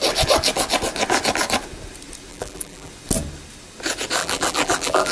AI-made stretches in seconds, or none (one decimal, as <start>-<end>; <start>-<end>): 2.3-2.9; 4.2-5.1